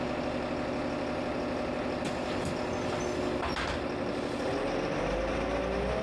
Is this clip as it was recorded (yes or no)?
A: yes